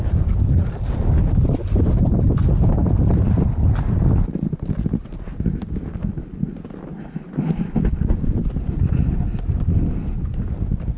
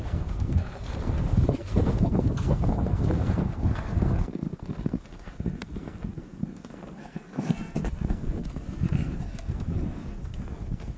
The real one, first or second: first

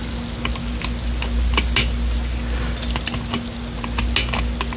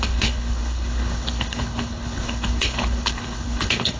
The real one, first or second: first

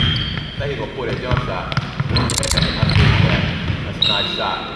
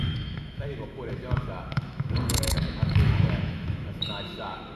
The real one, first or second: first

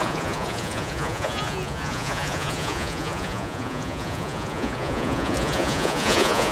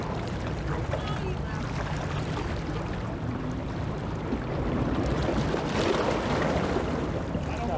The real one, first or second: second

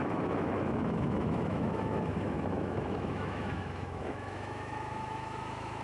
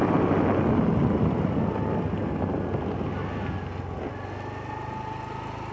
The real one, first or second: second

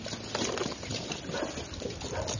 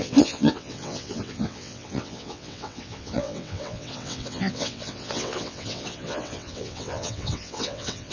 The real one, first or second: first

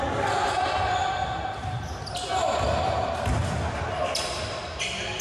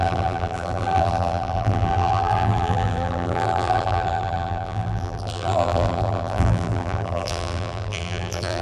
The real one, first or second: first